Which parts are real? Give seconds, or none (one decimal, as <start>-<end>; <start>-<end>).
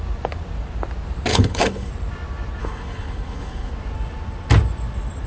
0.0-1.3; 1.9-2.6; 3.7-5.3